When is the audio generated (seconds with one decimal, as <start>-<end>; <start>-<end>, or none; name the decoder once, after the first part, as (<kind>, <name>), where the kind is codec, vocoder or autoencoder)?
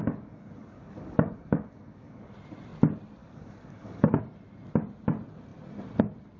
0.0-2.3 (codec, DAC); 3.2-4.2